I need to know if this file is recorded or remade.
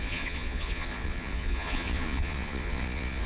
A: remade